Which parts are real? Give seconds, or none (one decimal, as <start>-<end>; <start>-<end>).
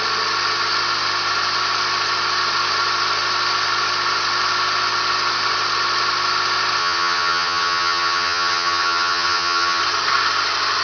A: 0.0-6.8; 9.8-10.8